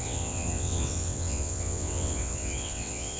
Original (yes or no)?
no